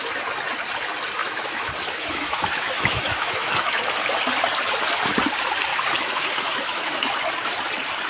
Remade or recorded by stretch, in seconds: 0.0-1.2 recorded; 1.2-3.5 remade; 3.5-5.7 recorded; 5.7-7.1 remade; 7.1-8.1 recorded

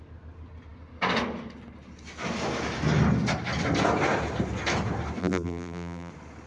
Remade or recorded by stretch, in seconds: 0.0-5.2 recorded; 5.2-6.1 remade; 6.1-6.5 recorded

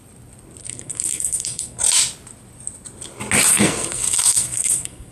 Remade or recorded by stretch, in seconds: 0.0-0.6 recorded; 0.6-1.8 remade; 1.8-3.5 recorded; 3.5-5.1 remade

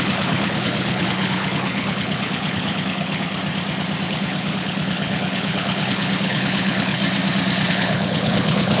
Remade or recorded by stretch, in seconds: 0.0-3.4 remade; 3.4-4.1 recorded; 4.1-7.0 remade; 7.0-7.7 recorded; 7.7-8.8 remade

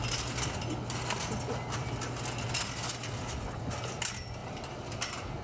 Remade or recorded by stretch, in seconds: 0.0-4.4 recorded; 4.4-4.9 remade; 4.9-5.4 recorded